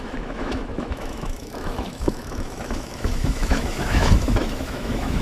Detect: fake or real fake